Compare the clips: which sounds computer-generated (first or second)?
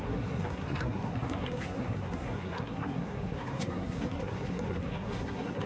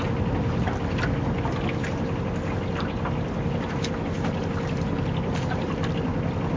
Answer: first